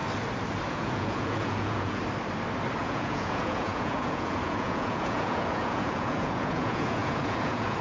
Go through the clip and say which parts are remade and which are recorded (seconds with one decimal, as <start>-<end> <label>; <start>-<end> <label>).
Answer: 0.0-0.7 recorded; 0.7-2.0 remade; 2.0-2.8 recorded; 2.8-7.8 remade